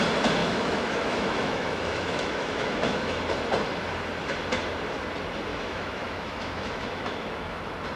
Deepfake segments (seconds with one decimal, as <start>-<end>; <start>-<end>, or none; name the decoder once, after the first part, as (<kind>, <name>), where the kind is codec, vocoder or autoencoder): 0.4-3.2 (autoencoder, DAC-VAE); 5.5-7.6